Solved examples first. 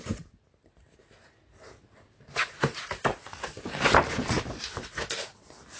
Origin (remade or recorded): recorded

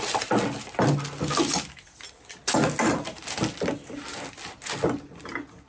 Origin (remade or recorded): recorded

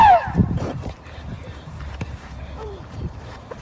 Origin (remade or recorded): remade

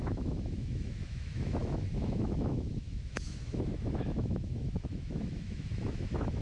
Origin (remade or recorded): remade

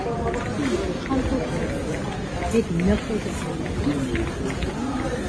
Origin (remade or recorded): recorded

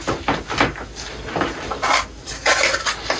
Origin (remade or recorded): recorded